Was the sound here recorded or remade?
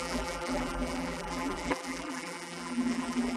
remade